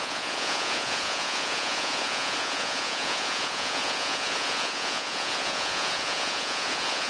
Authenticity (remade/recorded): remade